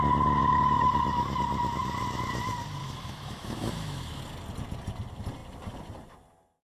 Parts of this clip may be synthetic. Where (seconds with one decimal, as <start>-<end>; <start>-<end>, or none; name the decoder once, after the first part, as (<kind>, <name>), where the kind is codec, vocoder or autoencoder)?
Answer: 0.4-1.4 (autoencoder, DAC-VAE); 2.8-4.2